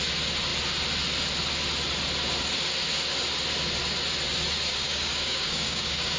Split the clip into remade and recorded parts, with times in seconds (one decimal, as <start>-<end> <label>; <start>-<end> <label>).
0.0-4.7 recorded; 4.7-6.2 remade